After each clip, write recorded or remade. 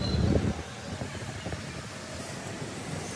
recorded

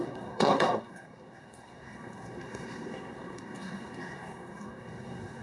remade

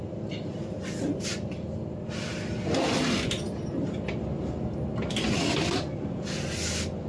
recorded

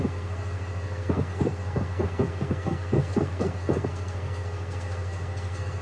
remade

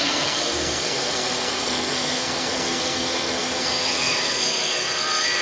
remade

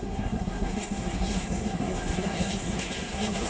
remade